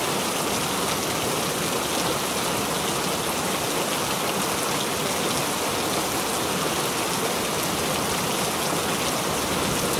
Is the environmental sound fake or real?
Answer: real